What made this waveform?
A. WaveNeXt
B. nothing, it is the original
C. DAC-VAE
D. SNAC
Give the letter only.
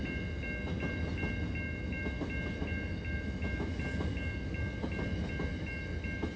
B